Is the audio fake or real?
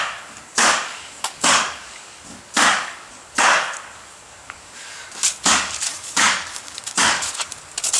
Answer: fake